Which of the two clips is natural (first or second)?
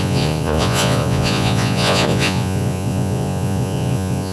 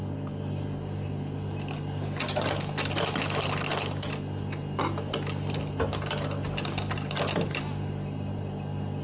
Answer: second